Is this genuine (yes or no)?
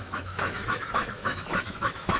no